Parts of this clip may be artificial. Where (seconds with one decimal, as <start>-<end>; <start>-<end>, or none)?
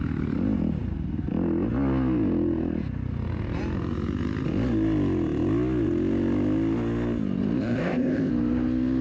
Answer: 7.6-8.3